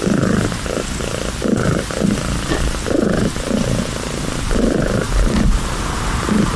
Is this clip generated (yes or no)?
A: no